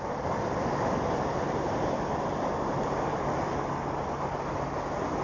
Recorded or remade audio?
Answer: recorded